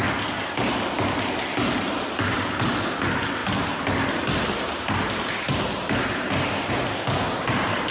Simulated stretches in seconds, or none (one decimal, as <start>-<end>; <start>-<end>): none